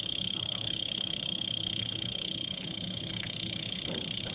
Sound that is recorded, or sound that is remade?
remade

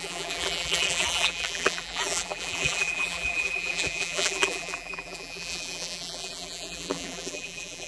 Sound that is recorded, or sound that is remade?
remade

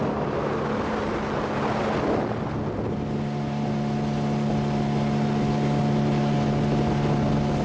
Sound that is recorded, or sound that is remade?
recorded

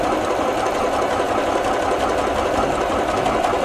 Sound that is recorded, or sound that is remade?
recorded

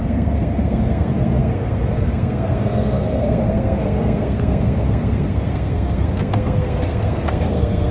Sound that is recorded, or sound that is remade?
remade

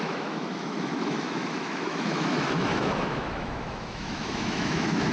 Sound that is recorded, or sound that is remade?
remade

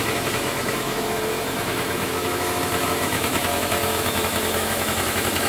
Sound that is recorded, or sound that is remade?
remade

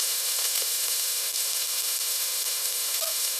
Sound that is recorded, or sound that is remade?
remade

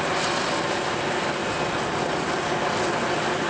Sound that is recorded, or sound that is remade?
recorded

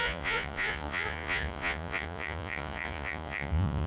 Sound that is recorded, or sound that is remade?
remade